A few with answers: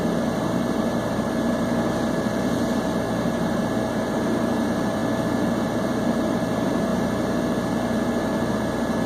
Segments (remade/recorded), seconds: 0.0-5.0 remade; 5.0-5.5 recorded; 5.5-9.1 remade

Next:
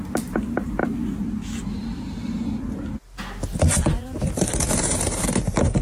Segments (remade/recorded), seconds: 0.0-0.8 remade; 0.8-4.3 recorded; 4.3-5.8 remade

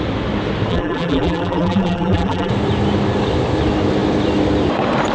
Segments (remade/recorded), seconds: 0.0-0.7 recorded; 0.7-2.5 remade; 2.5-5.1 recorded